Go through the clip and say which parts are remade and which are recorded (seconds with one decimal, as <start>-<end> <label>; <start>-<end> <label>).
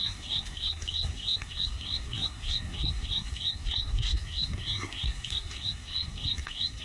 0.0-6.8 remade